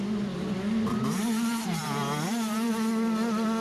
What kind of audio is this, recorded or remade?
remade